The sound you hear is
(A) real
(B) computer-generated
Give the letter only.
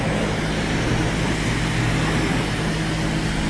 A